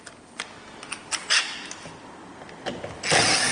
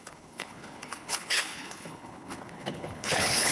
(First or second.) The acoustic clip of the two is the first